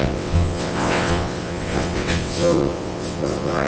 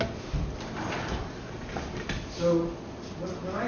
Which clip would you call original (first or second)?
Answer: second